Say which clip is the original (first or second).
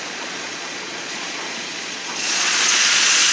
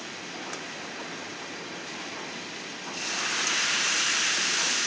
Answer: second